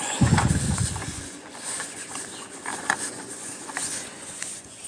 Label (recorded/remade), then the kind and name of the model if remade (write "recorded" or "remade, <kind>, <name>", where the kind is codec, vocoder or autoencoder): remade, vocoder, Vocos